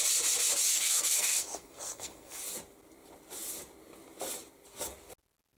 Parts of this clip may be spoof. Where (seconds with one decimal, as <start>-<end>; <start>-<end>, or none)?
0.7-2.4